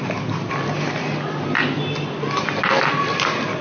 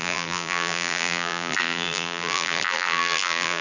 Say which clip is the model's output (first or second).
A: second